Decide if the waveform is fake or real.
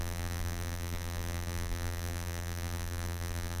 fake